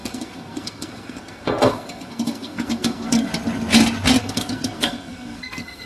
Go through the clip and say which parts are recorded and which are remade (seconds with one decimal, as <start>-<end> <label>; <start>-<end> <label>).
0.0-3.3 remade; 3.3-4.2 recorded; 4.2-5.9 remade